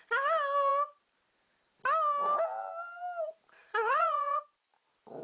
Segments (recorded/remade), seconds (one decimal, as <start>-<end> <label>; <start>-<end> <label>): 0.0-3.6 recorded; 3.6-4.4 remade; 4.4-5.2 recorded